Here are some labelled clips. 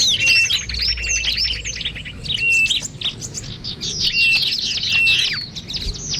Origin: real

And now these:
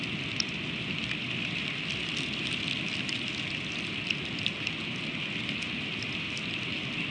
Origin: real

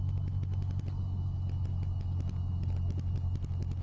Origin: real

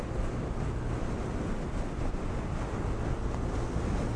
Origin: real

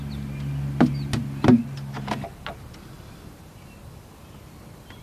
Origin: real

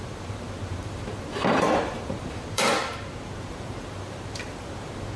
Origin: fake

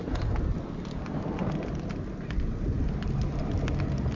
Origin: real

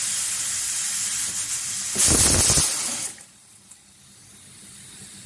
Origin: real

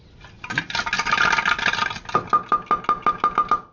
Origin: real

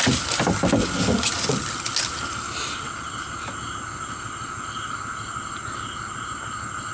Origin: real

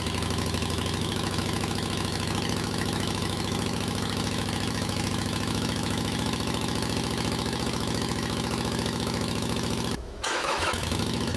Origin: fake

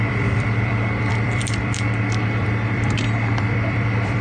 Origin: fake